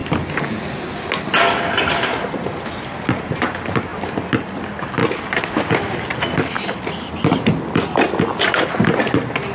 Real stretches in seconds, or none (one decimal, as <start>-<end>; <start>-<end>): 0.0-9.5